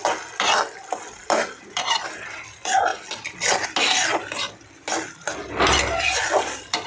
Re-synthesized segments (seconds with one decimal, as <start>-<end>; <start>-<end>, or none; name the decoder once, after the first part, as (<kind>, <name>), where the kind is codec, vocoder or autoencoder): none